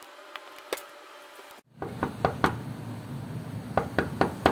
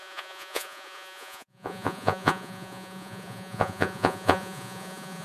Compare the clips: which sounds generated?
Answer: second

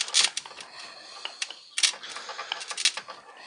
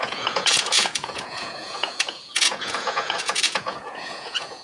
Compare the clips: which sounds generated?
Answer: second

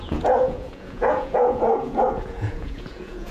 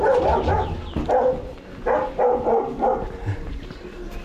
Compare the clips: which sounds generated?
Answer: first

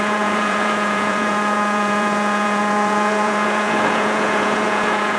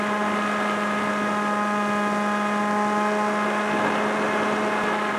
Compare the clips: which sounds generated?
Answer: first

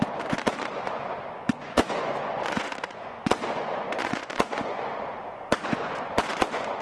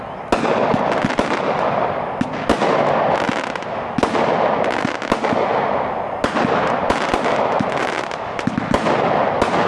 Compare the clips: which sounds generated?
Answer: first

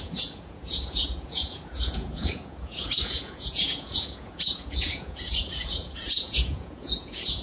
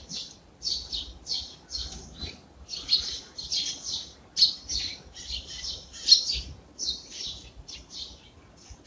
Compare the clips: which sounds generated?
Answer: first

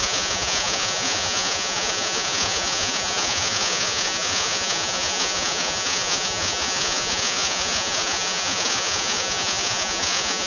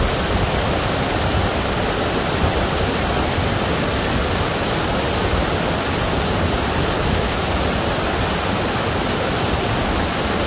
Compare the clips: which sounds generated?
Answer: first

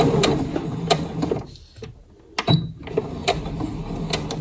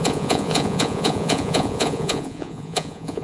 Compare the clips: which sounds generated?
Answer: second